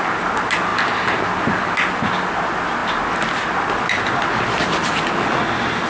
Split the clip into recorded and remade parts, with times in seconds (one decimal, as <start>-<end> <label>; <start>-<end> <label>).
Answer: 0.0-5.9 recorded